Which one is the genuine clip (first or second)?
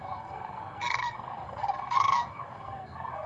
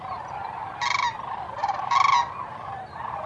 second